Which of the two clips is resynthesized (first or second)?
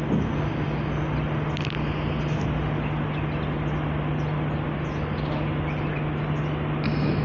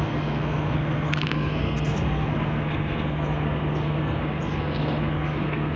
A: second